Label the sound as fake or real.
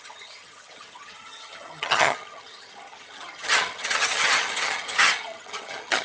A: fake